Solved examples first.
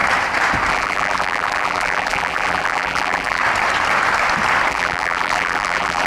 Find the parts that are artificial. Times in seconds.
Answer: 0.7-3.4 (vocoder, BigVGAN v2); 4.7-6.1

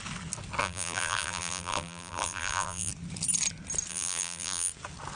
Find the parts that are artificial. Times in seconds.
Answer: 0.6-2.9 (vocoder, BigVGAN v2); 3.9-4.7

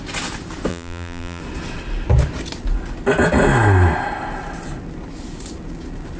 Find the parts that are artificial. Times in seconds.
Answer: 0.7-1.4 (vocoder, BigVGAN v2)